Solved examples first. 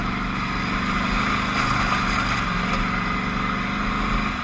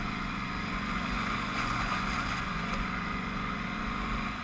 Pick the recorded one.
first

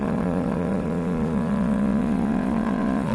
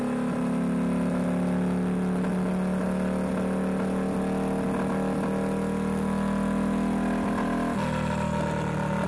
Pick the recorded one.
second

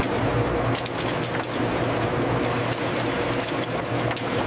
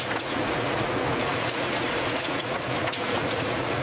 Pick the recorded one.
first